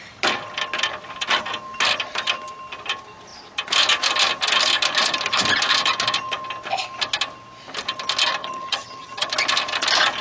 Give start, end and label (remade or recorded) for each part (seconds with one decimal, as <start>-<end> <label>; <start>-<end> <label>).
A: 0.0-8.4 recorded; 8.4-9.3 remade; 9.3-10.2 recorded